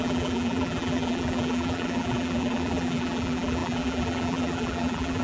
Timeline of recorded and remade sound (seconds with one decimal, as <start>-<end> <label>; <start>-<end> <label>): 0.0-5.2 remade